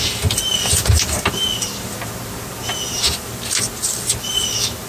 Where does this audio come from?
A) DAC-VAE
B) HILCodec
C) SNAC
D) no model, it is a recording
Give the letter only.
D